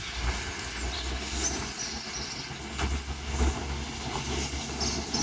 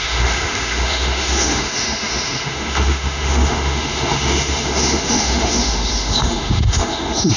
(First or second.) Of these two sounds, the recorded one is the first